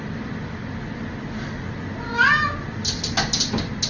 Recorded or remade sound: recorded